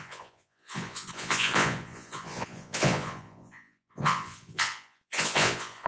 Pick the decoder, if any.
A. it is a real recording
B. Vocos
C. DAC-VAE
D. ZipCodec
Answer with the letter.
B